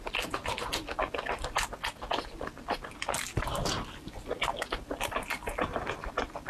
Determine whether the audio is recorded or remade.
recorded